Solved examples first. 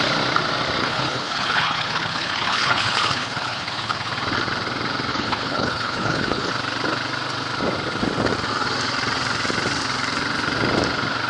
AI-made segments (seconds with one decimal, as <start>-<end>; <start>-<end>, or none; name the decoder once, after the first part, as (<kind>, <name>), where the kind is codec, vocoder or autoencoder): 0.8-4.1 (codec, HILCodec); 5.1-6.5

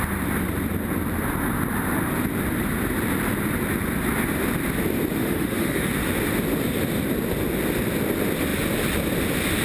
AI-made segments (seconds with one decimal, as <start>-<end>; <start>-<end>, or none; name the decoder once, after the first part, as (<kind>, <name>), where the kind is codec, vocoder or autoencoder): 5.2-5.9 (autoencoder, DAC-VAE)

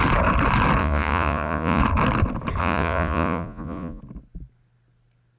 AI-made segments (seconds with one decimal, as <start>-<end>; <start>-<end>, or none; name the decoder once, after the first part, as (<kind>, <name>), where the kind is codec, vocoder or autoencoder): 0.8-1.8 (vocoder, Vocos); 2.6-4.0

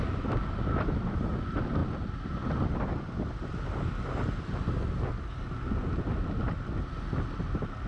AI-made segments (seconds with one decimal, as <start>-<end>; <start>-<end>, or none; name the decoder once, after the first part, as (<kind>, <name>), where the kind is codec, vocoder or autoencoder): none

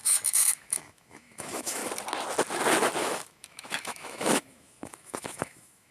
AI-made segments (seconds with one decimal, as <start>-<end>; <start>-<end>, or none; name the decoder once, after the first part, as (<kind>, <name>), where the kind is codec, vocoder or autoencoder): 0.0-1.8 (autoencoder, DAC-VAE); 3.0-5.9

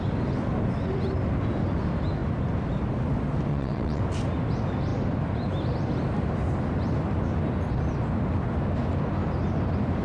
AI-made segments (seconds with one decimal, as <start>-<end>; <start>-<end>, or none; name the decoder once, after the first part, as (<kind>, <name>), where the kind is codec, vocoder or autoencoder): 3.5-4.0 (vocoder, WaveNeXt)

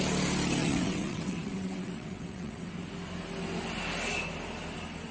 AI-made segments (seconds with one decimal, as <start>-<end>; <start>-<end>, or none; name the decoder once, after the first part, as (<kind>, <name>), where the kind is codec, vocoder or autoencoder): 0.6-2.7 (vocoder, WaveNeXt)